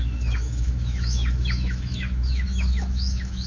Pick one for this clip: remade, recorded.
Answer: remade